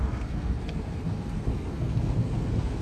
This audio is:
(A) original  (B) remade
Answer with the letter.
B